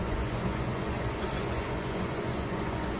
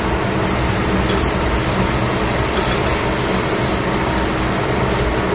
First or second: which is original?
second